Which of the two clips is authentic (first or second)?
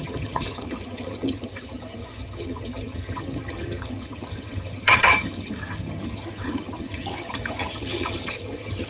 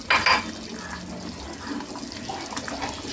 second